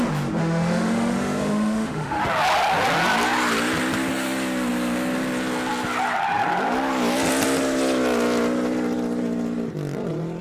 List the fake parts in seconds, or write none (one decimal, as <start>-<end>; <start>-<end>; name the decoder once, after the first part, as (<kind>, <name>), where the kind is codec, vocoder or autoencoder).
0.4-2.2 (autoencoder, DAC-VAE)